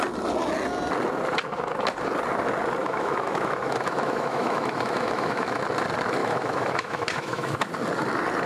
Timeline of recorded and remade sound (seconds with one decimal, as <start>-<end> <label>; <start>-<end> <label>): 0.0-2.8 recorded; 2.8-5.6 remade; 5.6-6.2 recorded; 6.2-7.7 remade; 7.7-8.5 recorded